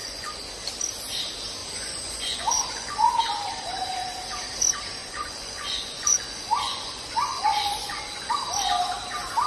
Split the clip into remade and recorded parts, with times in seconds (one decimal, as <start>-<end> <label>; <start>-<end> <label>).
0.0-0.5 remade; 0.5-1.6 recorded; 1.6-3.2 remade; 3.2-5.0 recorded; 5.0-8.3 remade; 8.3-9.5 recorded